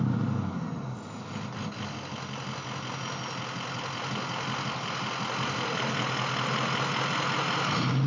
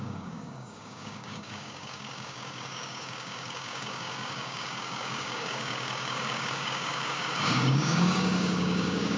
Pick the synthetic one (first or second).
second